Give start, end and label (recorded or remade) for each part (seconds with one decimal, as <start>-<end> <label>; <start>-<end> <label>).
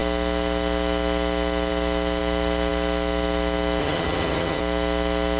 0.0-3.8 recorded; 3.8-4.6 remade; 4.6-5.4 recorded